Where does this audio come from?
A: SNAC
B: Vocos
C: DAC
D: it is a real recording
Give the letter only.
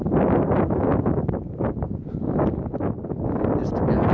D